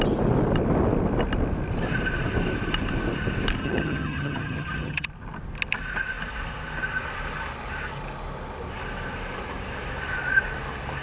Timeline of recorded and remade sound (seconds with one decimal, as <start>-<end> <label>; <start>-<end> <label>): 0.0-3.6 recorded; 3.6-5.1 remade; 5.1-11.0 recorded